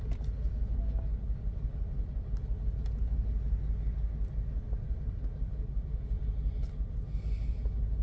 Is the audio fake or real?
real